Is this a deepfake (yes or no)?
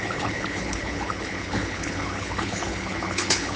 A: yes